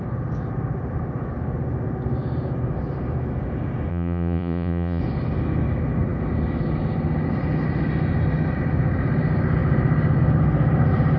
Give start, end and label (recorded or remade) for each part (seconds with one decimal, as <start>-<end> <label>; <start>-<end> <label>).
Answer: 0.0-3.9 recorded; 3.9-5.0 remade; 5.0-11.2 recorded